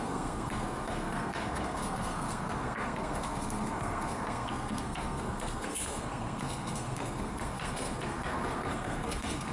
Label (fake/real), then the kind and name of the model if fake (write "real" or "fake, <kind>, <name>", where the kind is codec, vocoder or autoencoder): fake, codec, SNAC